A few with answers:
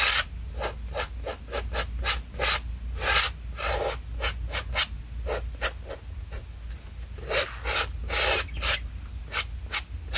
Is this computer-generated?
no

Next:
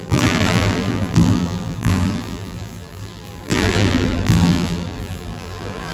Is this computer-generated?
yes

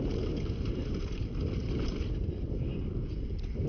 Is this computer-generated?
no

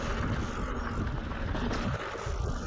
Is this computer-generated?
no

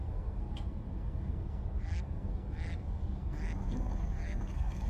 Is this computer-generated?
yes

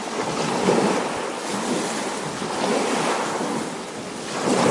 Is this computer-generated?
no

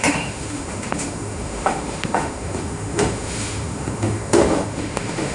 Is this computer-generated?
yes